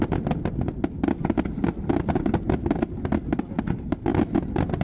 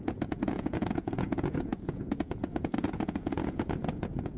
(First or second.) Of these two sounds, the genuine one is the first